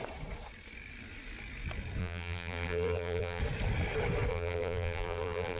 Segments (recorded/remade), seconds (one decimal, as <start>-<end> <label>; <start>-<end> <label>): 0.0-2.0 recorded; 2.0-3.4 remade; 3.4-4.3 recorded; 4.3-5.6 remade